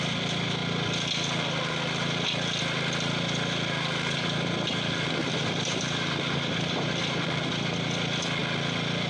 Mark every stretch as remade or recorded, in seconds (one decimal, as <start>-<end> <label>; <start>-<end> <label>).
0.0-5.2 recorded; 5.2-7.5 remade; 7.5-9.1 recorded